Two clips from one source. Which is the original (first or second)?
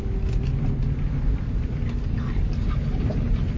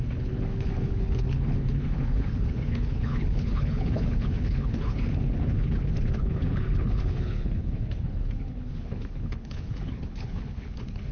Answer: first